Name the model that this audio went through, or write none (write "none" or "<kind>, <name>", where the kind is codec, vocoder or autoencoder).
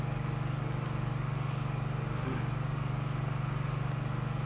none